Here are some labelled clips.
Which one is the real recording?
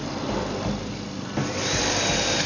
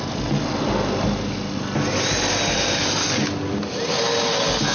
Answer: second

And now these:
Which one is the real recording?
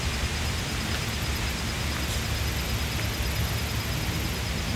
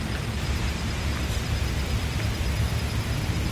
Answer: first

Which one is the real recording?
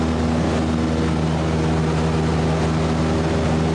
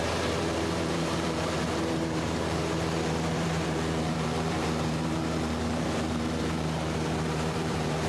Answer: first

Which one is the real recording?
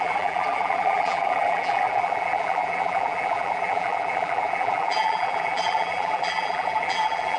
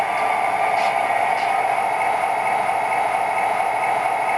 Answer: second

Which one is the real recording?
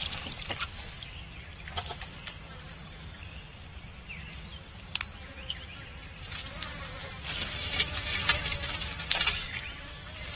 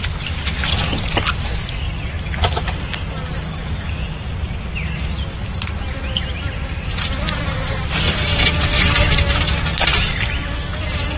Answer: second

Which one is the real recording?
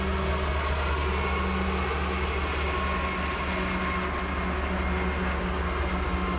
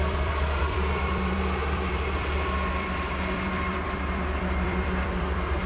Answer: first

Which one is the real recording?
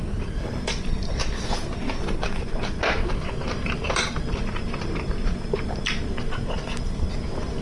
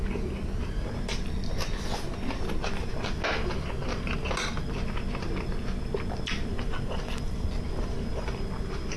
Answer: second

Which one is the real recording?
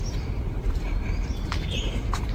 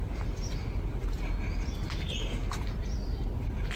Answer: second